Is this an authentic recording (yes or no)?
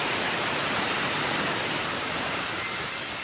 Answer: yes